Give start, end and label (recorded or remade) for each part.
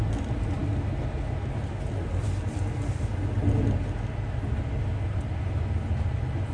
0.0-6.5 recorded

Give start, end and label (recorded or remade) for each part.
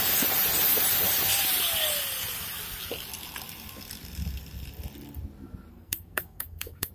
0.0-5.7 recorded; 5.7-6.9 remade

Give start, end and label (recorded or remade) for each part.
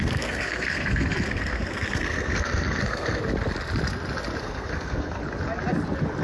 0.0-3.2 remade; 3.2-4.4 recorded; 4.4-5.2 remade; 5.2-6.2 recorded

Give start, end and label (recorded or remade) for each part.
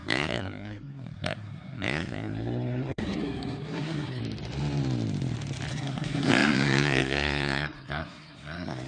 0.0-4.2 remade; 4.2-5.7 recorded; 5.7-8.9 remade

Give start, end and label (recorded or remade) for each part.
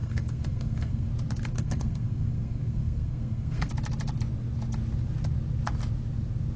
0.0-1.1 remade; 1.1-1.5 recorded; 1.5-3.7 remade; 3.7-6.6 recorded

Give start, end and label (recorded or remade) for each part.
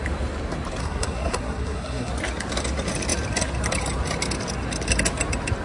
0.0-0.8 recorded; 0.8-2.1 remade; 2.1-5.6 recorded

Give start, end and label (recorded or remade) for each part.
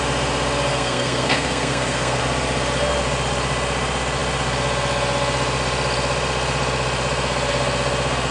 0.0-0.7 recorded; 0.7-2.2 remade; 2.2-8.3 recorded